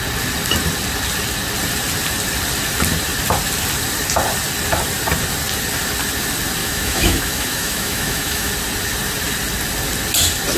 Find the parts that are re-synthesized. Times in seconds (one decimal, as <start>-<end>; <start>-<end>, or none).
6.6-8.5